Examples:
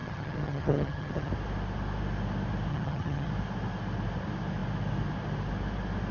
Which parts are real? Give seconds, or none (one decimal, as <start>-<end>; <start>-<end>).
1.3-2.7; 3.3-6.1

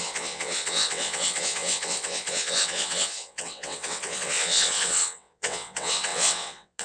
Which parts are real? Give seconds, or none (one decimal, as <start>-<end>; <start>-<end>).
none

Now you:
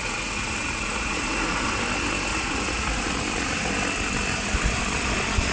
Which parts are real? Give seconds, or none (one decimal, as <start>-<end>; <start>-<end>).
1.7-2.3; 3.7-4.3; 4.8-5.5

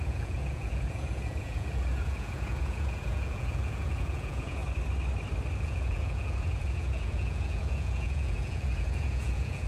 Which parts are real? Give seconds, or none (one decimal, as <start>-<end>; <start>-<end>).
4.6-5.6

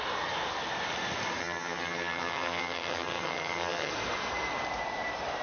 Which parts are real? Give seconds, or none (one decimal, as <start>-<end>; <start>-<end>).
0.0-1.4; 3.9-5.4

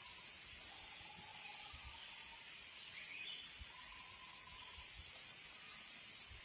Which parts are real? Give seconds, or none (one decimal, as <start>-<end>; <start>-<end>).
0.7-2.3; 6.0-6.4

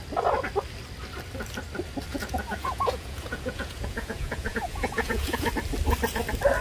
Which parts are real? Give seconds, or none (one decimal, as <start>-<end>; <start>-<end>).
0.0-2.1; 5.5-6.6